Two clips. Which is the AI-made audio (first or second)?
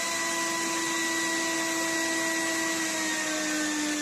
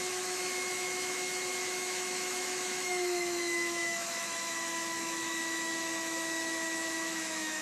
second